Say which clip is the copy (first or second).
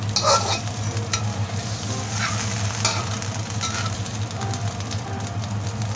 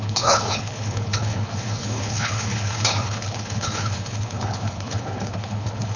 second